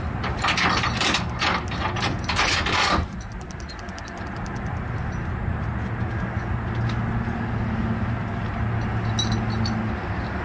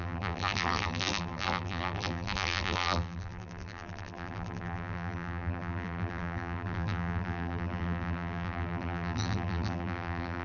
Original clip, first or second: first